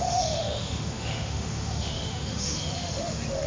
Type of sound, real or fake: fake